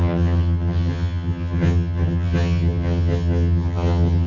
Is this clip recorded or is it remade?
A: remade